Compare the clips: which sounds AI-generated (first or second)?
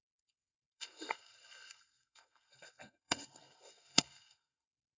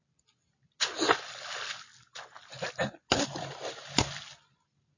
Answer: first